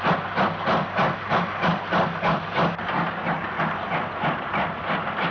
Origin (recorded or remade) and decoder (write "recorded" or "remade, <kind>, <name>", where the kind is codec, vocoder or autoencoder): recorded